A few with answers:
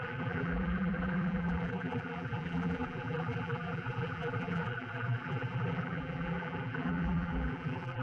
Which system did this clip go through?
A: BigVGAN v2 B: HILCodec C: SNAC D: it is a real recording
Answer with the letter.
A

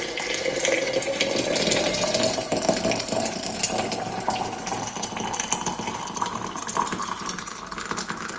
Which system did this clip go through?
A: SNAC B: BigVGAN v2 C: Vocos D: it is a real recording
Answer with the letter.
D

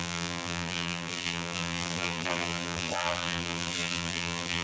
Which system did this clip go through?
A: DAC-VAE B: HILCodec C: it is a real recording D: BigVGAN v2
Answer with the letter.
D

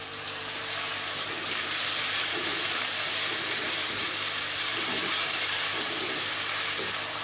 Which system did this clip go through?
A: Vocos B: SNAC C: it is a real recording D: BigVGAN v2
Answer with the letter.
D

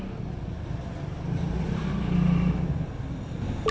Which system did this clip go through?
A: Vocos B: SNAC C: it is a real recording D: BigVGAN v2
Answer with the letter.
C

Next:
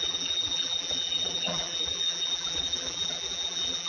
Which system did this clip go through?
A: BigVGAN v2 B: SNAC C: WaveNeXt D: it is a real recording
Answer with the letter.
A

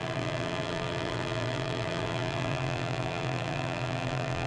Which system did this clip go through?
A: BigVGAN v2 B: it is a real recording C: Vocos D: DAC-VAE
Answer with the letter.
A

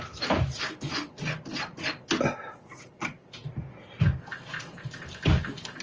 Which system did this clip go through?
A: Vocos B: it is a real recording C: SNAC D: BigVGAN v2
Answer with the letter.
B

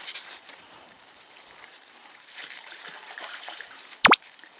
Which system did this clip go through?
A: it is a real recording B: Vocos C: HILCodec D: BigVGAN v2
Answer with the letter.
D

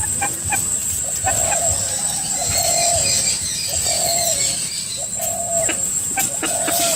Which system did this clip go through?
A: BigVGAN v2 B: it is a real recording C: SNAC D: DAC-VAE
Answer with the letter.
A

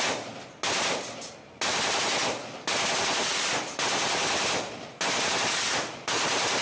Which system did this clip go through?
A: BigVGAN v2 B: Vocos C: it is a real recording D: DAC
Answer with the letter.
C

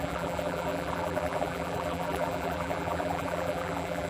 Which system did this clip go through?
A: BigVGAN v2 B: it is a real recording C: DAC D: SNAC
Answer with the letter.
A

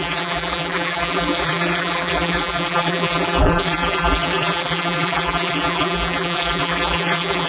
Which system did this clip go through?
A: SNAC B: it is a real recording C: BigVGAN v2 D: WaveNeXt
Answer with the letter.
C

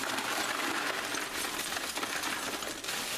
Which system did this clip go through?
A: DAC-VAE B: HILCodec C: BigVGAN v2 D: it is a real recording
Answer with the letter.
D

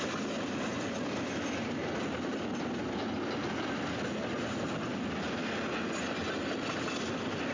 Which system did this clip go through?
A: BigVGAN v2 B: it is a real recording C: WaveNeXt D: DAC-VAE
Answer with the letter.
B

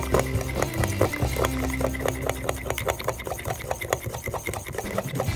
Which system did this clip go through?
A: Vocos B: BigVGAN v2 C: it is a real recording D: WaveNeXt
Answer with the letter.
C